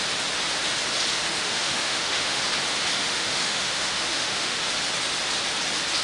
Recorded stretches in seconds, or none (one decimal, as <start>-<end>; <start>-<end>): 0.0-1.1; 2.4-3.0; 4.6-6.0